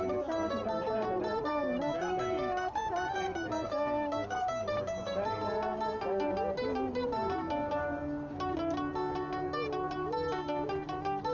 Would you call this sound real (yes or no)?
yes